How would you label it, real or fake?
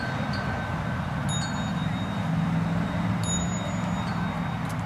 real